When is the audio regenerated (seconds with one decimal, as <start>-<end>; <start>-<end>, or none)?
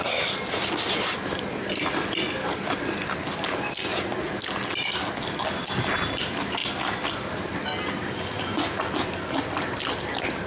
none